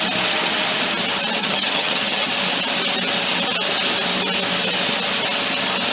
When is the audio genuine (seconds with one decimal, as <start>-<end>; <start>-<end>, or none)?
0.0-1.4; 2.3-5.9